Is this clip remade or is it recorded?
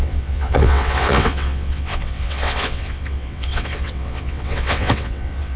remade